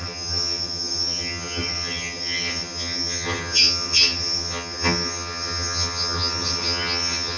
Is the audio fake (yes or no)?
yes